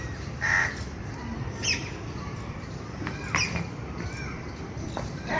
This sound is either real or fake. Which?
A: fake